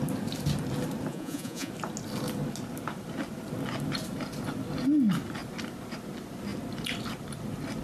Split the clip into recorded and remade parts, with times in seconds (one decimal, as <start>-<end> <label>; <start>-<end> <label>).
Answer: 0.0-1.1 recorded; 1.1-1.7 remade; 1.7-7.8 recorded